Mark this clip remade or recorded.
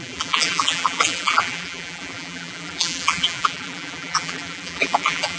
remade